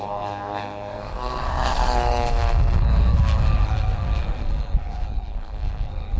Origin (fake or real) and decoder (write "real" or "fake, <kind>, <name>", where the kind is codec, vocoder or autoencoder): fake, codec, SNAC